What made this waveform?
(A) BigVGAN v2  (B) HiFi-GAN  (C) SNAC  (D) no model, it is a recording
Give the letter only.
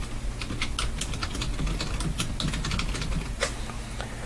D